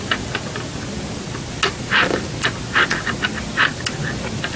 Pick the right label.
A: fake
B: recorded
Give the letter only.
B